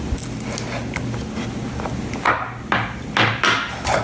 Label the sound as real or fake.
real